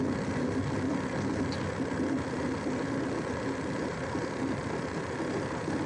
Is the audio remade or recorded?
recorded